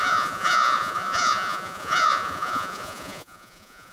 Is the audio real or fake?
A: fake